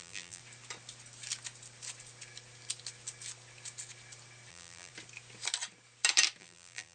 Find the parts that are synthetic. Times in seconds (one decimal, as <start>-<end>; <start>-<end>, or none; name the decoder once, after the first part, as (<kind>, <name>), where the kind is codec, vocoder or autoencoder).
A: 0.0-0.4 (vocoder, BigVGAN v2); 4.5-4.9; 6.4-6.9